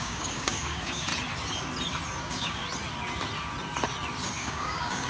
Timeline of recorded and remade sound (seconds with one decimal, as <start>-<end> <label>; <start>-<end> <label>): 0.0-1.1 remade; 1.1-2.2 recorded; 2.2-2.6 remade; 2.6-4.4 recorded; 4.4-5.1 remade